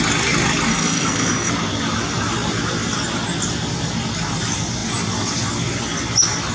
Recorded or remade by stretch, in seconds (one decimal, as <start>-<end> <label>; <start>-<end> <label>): 0.0-0.7 recorded; 0.7-1.5 remade; 1.5-6.5 recorded